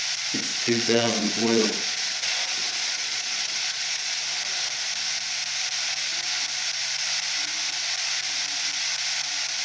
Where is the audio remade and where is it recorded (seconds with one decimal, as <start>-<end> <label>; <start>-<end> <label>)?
0.0-0.5 recorded; 0.5-4.2 remade; 4.2-9.6 recorded

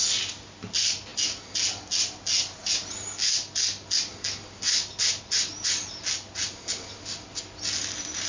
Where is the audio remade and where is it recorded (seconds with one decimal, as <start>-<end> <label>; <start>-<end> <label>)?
0.0-8.3 recorded